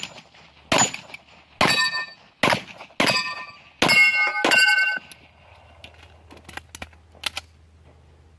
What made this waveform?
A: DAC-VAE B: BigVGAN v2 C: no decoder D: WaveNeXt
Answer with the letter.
C